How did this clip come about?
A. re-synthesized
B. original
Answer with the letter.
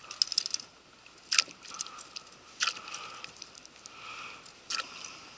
B